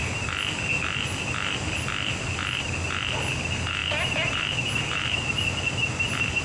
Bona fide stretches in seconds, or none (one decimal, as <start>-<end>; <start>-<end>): 0.0-6.4